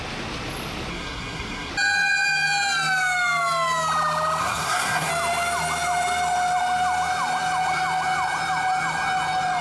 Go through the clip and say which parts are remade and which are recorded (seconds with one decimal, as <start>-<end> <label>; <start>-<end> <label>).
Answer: 0.0-0.9 recorded; 0.9-1.7 remade; 1.7-4.4 recorded; 4.4-5.1 remade; 5.1-9.6 recorded